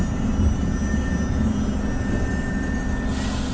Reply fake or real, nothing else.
real